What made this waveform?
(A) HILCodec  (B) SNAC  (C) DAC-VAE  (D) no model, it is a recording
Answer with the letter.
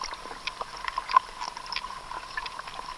D